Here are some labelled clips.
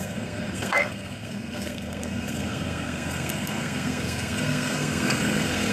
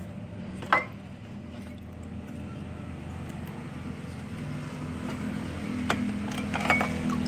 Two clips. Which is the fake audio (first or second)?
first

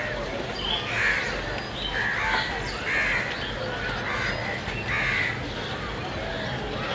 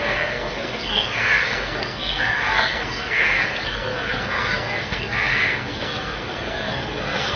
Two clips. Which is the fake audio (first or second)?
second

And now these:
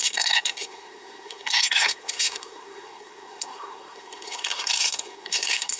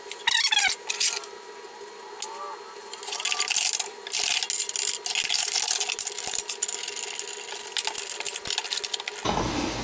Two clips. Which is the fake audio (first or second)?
first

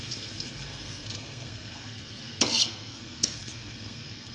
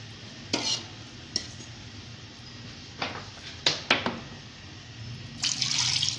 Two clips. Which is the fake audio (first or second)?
first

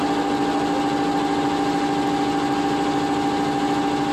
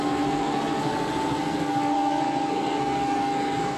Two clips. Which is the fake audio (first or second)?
second